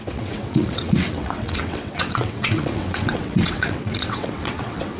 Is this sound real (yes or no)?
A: no